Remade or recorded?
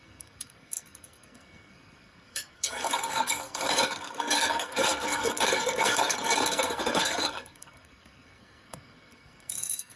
remade